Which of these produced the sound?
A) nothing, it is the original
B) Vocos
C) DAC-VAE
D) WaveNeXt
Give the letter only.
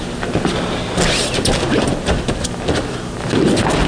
A